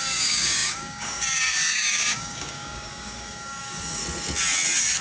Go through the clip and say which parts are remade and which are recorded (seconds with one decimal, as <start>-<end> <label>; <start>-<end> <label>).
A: 0.0-4.0 remade; 4.0-5.0 recorded